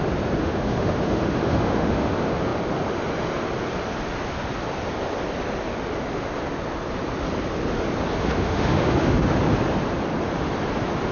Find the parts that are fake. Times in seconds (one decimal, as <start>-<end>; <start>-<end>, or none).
0.4-2.1; 8.2-9.4